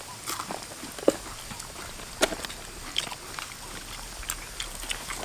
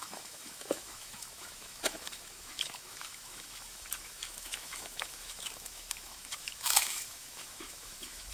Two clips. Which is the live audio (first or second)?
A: first